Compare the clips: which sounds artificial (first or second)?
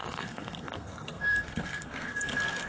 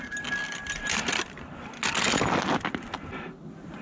first